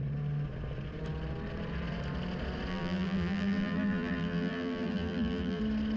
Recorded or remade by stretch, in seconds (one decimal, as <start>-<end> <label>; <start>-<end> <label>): 0.0-2.7 recorded; 2.7-5.6 remade; 5.6-6.0 recorded